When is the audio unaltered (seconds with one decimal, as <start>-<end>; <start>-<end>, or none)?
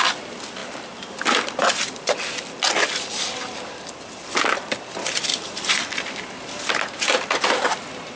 0.0-0.6; 1.6-5.3; 6.7-8.2